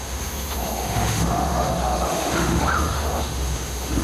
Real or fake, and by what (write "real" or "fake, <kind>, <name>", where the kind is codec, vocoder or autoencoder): fake, autoencoder, DAC-VAE